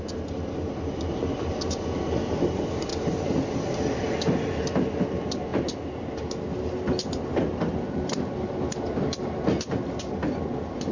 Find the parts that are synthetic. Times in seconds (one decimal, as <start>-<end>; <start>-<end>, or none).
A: none